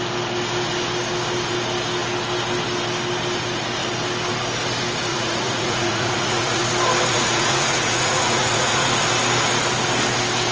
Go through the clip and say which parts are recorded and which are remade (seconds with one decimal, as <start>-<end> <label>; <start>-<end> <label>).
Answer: 0.0-5.1 recorded; 5.1-6.6 remade; 6.6-7.1 recorded; 7.1-9.0 remade; 9.0-10.5 recorded